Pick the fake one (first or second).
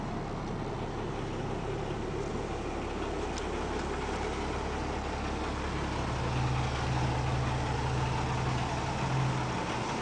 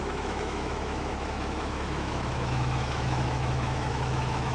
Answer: second